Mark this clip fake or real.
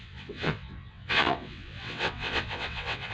fake